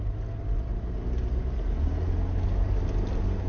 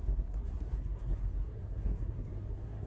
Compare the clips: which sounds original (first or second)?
first